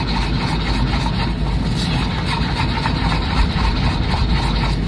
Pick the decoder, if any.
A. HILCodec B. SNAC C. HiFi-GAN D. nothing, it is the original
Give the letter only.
D